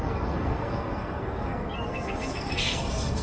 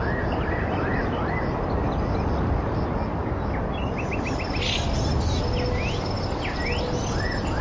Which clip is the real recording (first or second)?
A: second